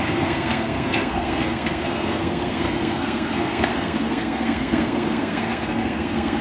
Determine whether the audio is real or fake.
fake